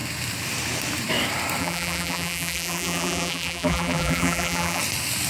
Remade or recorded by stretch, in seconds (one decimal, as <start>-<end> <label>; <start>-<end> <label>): 0.0-1.6 recorded; 1.6-4.8 remade; 4.8-5.3 recorded